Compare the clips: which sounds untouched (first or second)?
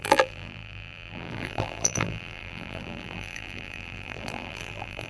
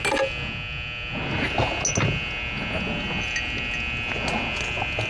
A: second